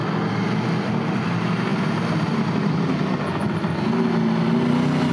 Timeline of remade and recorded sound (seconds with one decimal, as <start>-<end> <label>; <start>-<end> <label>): 0.0-5.1 recorded